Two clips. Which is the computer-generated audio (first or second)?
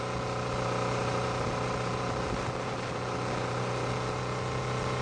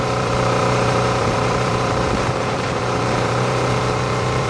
second